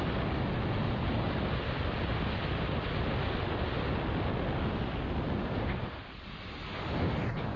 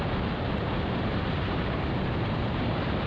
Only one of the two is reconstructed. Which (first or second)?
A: second